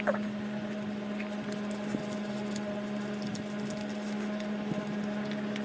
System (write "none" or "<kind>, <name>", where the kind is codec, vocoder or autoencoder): none